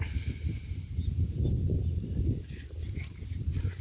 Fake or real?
real